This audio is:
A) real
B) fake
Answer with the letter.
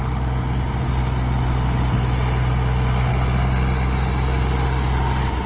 A